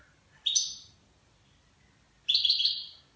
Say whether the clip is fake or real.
real